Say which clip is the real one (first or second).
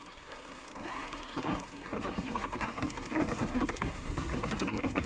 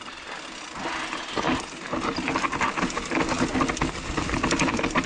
second